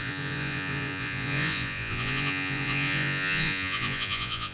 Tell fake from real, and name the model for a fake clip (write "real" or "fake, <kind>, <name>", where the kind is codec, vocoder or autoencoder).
fake, vocoder, Vocos